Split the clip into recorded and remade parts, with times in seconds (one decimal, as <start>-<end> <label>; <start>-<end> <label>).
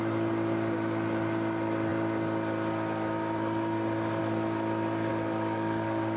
0.0-5.1 recorded; 5.1-6.2 remade